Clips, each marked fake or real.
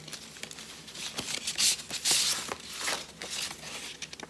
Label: real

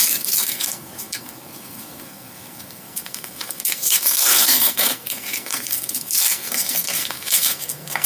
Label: fake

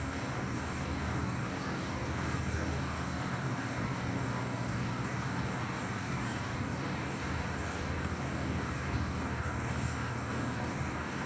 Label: fake